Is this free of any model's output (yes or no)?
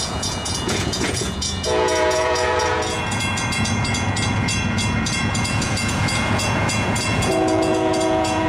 no